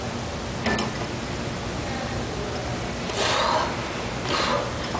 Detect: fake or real real